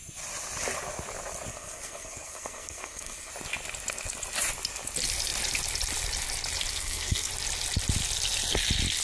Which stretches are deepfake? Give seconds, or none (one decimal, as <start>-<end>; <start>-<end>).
1.5-3.3; 6.7-7.3